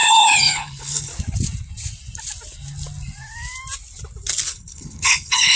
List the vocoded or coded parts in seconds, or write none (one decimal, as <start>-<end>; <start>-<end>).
0.0-1.1; 4.5-5.6